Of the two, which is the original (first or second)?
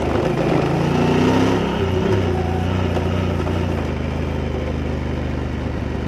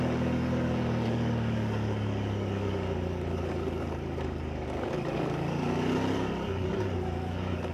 first